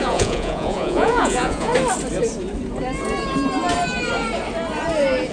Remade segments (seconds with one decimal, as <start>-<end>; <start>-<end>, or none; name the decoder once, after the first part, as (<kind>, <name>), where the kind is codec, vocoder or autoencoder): 0.0-1.7 (vocoder, Vocos)

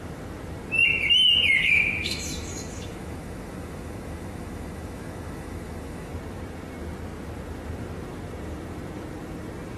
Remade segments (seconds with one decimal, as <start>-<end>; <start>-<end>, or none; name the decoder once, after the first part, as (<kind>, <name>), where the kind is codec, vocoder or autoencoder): 1.6-6.1 (autoencoder, DAC-VAE)

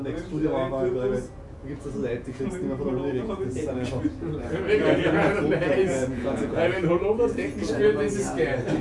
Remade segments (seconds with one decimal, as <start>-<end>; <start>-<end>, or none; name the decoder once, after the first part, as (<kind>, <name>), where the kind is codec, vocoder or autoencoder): 1.6-2.4 (vocoder, Vocos); 3.1-3.9; 5.8-8.1